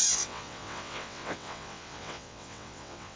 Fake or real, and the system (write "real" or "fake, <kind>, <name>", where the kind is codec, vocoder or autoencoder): fake, vocoder, WaveNeXt